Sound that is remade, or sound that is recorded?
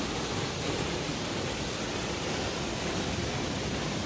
recorded